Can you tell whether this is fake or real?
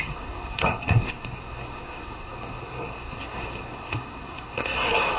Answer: fake